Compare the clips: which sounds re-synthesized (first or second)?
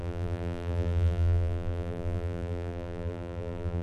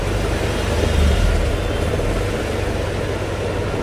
first